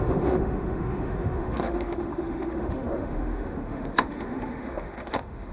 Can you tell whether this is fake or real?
fake